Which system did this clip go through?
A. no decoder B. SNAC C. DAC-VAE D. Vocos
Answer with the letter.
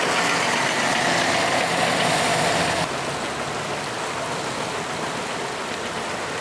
A